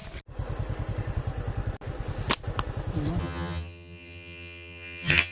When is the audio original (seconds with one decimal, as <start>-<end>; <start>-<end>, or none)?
0.0-3.2